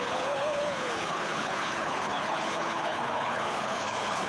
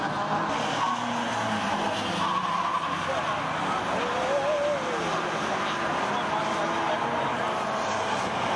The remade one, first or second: first